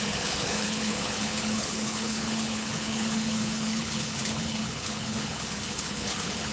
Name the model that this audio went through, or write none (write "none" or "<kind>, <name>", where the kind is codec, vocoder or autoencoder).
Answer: codec, HILCodec